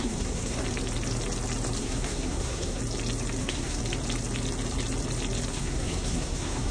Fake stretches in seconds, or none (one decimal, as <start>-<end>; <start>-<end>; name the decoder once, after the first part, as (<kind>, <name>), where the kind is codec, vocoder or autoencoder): 0.0-0.6 (codec, SNAC); 1.8-2.8; 3.4-3.8; 5.5-6.7